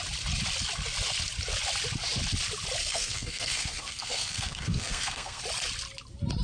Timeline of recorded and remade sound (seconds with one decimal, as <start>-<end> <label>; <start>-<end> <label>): 0.0-2.8 recorded; 2.8-5.4 remade; 5.4-6.4 recorded